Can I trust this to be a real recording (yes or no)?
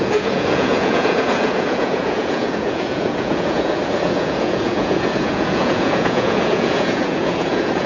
no